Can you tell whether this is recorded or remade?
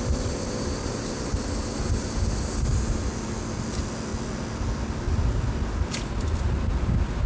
recorded